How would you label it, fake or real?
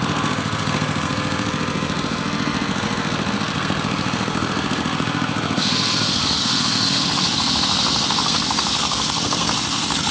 fake